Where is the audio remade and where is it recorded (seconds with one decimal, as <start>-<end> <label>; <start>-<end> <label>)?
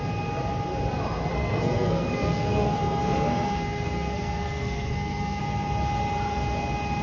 0.0-1.3 recorded; 1.3-5.4 remade; 5.4-7.0 recorded